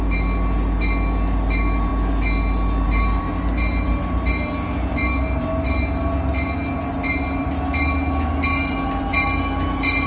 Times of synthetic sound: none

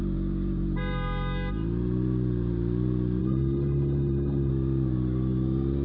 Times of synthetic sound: 3.2-4.5

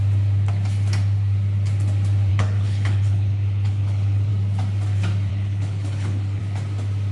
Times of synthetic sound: 2.3-4.3; 5.3-6.4